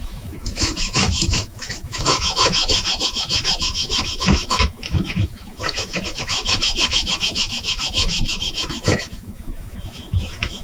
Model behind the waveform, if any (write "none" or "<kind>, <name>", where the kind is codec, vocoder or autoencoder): autoencoder, DAC-VAE